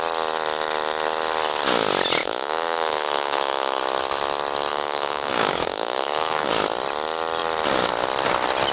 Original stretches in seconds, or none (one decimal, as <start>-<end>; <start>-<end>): 0.0-2.2; 3.8-4.7; 6.5-8.7